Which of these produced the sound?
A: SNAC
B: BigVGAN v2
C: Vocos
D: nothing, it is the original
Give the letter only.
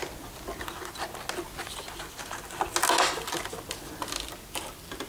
D